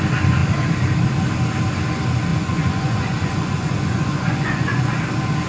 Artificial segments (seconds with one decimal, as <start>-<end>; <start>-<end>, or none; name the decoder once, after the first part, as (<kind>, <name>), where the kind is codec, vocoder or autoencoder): 2.3-5.0 (vocoder, Vocos)